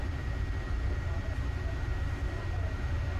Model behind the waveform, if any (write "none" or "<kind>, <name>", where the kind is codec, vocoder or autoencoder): none